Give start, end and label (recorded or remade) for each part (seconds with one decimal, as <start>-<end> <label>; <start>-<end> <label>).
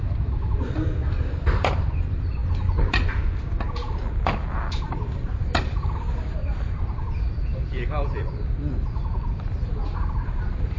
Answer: 0.0-2.4 remade; 2.4-4.4 recorded; 4.4-10.8 remade